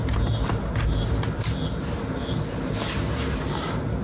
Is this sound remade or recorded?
recorded